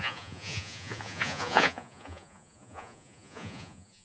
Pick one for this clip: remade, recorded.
remade